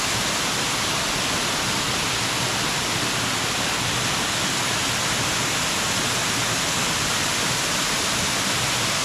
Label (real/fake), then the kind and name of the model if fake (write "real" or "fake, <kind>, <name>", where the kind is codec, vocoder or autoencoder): real